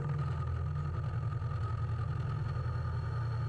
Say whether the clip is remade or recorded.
recorded